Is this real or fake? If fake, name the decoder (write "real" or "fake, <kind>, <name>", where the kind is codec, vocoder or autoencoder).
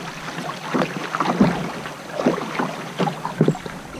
real